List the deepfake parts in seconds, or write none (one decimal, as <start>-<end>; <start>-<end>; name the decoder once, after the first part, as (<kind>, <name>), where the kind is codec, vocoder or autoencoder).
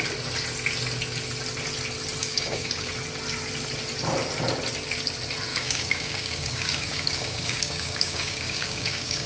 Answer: 2.2-2.9 (codec, DAC); 5.5-9.3